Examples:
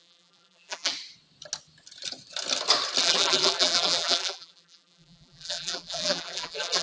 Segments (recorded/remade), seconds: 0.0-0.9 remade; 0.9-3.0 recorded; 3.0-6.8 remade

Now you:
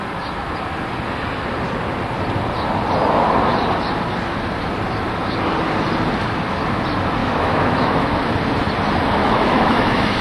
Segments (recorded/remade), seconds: 0.0-7.2 recorded; 7.2-8.2 remade; 8.2-9.2 recorded; 9.2-10.2 remade

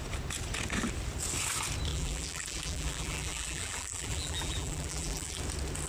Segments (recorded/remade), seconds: 0.0-1.9 recorded; 1.9-5.4 remade; 5.4-5.9 recorded

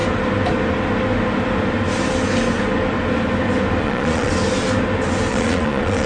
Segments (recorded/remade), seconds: 0.0-3.8 recorded; 3.8-4.3 remade; 4.3-5.3 recorded; 5.3-6.1 remade